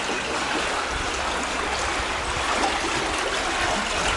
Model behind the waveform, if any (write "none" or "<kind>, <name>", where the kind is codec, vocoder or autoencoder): none